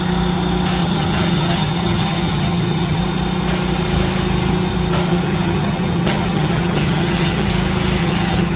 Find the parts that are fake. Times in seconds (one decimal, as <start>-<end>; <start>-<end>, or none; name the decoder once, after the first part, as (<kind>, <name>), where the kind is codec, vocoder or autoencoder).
0.8-3.0 (vocoder, HiFi-GAN); 5.1-7.5; 8.0-8.6